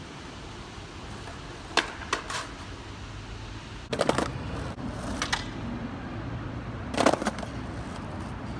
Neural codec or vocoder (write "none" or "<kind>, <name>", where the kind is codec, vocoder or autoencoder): none